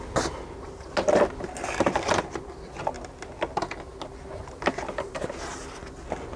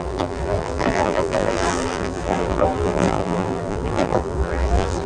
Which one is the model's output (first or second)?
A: second